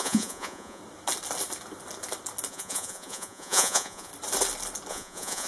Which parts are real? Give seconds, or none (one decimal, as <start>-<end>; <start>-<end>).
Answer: 0.8-2.5; 4.1-4.9